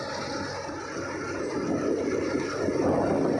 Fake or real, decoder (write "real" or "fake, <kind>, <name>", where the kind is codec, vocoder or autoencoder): real